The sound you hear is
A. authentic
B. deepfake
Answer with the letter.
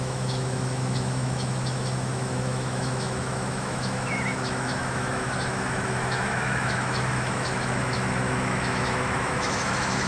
B